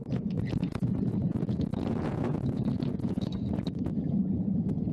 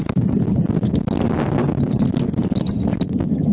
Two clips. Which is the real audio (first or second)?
second